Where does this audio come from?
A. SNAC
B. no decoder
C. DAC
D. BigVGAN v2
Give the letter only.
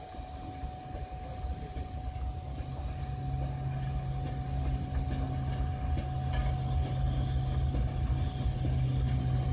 B